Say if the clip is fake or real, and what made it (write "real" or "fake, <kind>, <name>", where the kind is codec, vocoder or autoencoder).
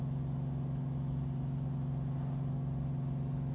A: real